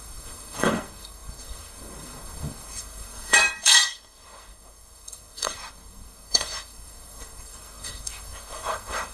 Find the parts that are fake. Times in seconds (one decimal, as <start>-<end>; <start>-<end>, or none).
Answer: 0.0-9.1

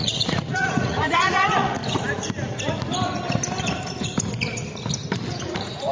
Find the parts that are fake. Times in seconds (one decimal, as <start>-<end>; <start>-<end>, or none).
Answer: 0.0-1.8; 5.3-5.9

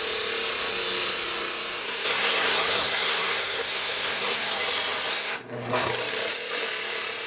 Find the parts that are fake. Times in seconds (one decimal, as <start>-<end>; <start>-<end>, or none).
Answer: 1.8-4.6; 5.1-5.9

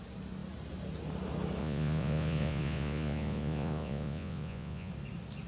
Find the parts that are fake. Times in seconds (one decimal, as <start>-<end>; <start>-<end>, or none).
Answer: 1.6-4.9

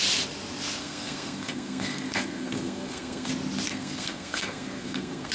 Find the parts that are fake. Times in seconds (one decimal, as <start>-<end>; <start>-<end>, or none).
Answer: 0.8-3.3; 3.7-5.3

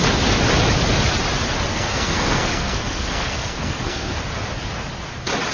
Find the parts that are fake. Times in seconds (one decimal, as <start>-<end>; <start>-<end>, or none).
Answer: 1.7-4.2

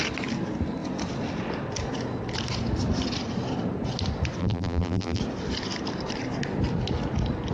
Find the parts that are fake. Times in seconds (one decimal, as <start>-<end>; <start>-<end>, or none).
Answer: 4.4-5.2